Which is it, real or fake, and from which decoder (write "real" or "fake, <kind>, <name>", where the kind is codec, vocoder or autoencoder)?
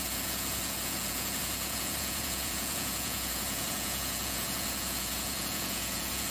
fake, vocoder, Vocos